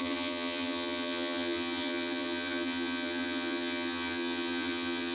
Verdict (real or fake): fake